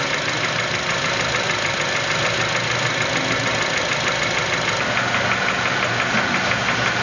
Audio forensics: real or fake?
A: real